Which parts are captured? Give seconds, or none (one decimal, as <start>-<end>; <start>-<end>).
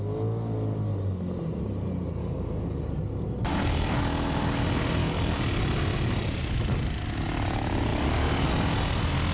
0.0-2.2; 2.8-3.5; 4.0-5.0; 5.6-9.3